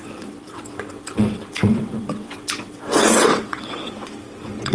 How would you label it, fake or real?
fake